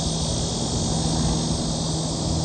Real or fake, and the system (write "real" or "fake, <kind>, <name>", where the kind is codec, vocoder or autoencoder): real